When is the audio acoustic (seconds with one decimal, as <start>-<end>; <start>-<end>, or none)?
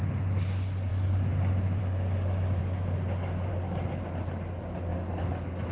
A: 0.0-5.7